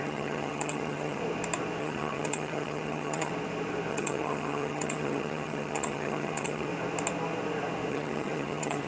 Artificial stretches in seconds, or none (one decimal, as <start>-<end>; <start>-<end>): 0.0-1.2; 1.8-3.3; 3.9-6.7; 7.9-8.9